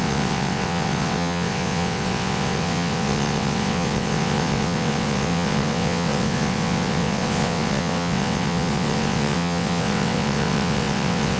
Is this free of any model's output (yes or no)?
no